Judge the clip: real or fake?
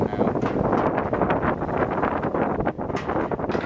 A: real